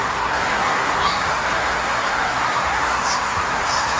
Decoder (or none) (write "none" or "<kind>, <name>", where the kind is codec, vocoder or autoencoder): codec, SNAC